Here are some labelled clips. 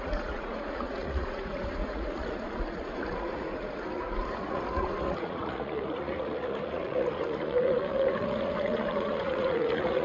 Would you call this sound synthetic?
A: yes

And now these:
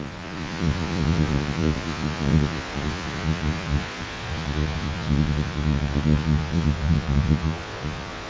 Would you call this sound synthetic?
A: yes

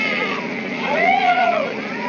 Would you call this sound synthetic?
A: yes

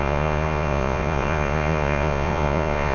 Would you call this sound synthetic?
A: yes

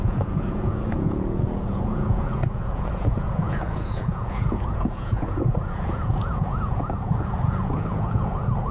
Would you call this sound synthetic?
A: yes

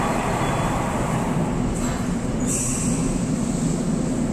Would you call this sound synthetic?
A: no